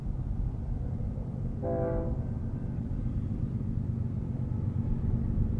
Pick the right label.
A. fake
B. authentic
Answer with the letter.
B